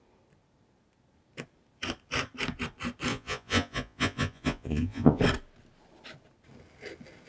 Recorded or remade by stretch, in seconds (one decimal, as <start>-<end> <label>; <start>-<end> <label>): 0.0-3.1 recorded; 3.1-5.2 remade; 5.2-7.3 recorded